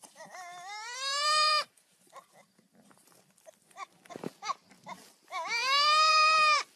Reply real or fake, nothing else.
fake